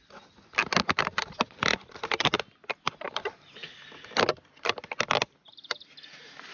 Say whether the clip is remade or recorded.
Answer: recorded